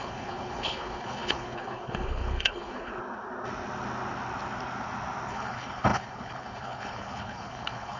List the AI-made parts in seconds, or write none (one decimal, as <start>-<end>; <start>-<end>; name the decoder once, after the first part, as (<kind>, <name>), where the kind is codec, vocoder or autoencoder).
0.0-2.9 (codec, HILCodec); 5.3-8.0